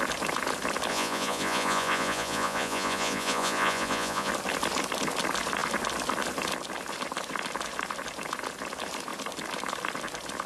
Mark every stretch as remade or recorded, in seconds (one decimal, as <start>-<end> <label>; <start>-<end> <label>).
0.0-0.9 recorded; 0.9-4.3 remade; 4.3-10.5 recorded